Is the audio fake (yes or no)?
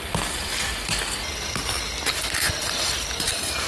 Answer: no